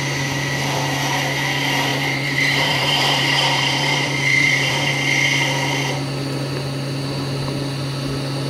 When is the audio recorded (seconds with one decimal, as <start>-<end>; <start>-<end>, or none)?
0.0-1.9; 4.9-8.5